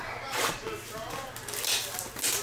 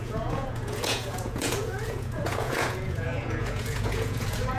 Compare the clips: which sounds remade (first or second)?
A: second